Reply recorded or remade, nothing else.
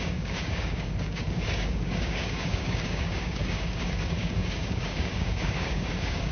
remade